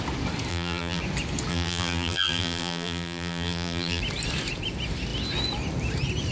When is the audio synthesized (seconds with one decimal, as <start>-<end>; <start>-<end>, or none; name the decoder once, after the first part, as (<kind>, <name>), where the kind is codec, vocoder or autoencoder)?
0.5-1.0 (vocoder, BigVGAN v2); 1.5-4.0